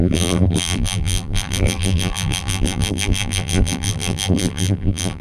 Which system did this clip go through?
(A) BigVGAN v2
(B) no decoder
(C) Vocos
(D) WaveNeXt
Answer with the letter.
A